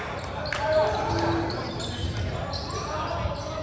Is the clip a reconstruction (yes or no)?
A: no